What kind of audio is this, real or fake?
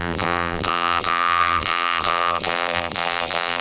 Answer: fake